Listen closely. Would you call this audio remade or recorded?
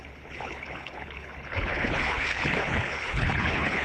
remade